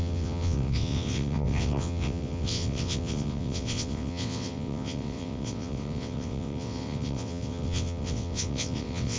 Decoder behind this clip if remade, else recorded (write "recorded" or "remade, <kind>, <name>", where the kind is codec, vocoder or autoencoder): remade, vocoder, WaveNeXt